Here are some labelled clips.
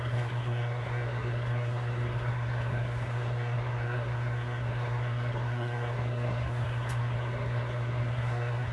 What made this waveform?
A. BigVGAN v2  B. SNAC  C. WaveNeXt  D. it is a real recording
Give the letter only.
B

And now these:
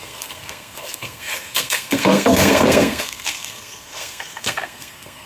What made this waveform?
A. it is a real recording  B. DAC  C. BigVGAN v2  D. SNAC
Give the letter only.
D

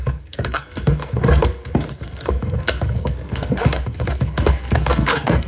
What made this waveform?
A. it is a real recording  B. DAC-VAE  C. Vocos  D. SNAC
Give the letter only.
D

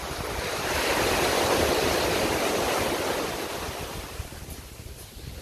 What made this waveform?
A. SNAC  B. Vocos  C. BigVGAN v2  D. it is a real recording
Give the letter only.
D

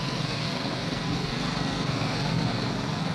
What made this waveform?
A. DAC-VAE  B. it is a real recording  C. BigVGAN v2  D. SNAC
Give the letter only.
D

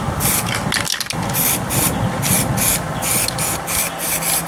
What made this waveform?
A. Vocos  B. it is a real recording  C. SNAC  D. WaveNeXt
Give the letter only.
B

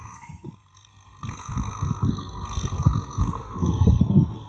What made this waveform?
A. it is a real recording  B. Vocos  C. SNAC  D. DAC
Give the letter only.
C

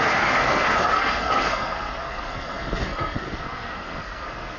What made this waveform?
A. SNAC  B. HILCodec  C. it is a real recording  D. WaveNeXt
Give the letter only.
A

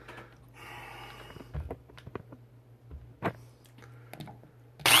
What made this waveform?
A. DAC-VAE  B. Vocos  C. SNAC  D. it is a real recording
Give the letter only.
D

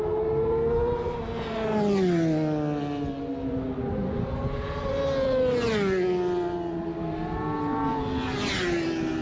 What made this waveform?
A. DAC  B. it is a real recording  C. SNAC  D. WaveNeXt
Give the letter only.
B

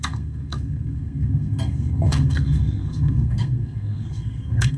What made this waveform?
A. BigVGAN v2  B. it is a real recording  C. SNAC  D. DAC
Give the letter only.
C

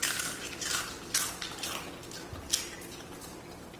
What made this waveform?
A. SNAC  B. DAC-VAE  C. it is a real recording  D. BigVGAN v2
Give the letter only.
C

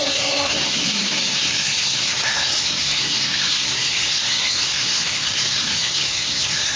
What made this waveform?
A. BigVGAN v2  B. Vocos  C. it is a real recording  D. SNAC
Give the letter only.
D